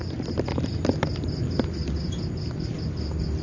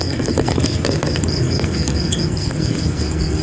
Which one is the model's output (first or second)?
second